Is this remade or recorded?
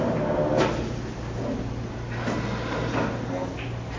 recorded